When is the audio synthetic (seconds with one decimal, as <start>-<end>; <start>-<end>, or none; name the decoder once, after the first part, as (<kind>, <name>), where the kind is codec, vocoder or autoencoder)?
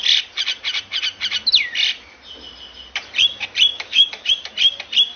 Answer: 3.7-4.3 (autoencoder, DAC-VAE)